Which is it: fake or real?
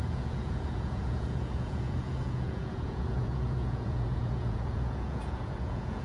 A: fake